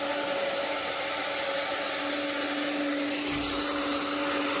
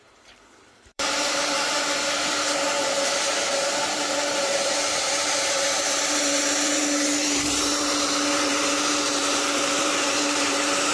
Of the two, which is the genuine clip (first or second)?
first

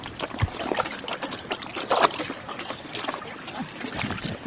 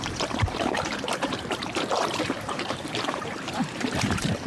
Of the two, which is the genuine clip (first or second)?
first